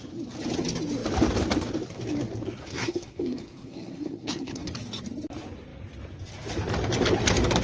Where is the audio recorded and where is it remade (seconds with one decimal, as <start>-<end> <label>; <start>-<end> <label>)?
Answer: 0.0-2.6 recorded; 2.6-4.7 remade; 4.7-7.6 recorded